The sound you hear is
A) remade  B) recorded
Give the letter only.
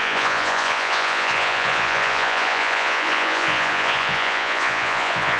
A